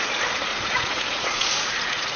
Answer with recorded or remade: remade